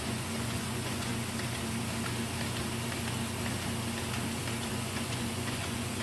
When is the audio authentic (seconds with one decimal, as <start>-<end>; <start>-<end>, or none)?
1.1-4.7